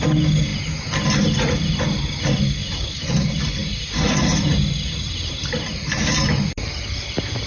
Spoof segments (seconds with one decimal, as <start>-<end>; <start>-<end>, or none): 2.6-3.1